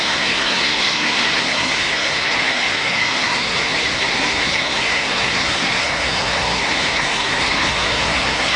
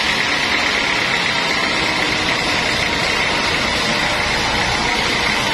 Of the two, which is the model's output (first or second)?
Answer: first